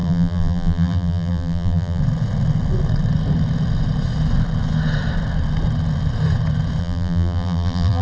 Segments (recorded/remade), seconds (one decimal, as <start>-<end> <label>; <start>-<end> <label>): 0.0-2.0 remade; 2.0-6.8 recorded; 6.8-8.0 remade